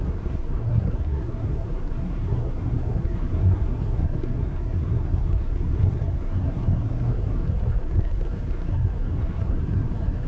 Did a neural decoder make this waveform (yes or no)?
yes